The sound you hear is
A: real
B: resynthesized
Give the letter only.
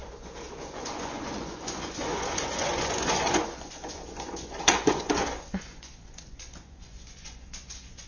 B